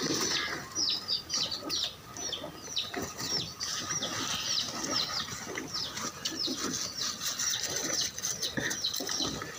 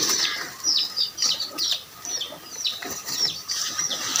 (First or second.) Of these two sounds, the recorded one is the first